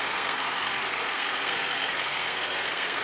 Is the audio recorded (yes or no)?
no